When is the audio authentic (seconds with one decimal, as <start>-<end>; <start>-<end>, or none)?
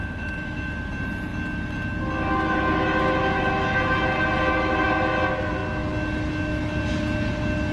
0.7-7.7